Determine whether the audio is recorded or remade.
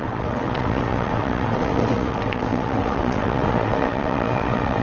remade